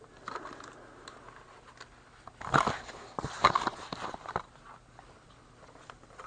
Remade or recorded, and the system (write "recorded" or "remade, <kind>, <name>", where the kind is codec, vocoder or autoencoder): recorded